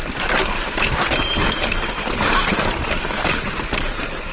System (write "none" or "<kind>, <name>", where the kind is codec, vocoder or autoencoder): vocoder, BigVGAN v2